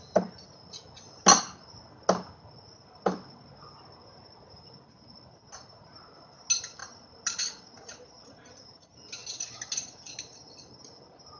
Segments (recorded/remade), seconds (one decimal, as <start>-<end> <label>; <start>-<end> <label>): 0.0-11.4 recorded